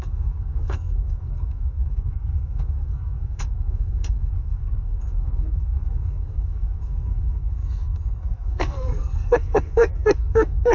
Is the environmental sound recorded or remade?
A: remade